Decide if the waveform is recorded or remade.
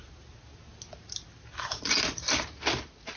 recorded